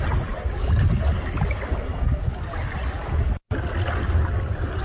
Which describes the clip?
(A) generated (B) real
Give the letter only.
B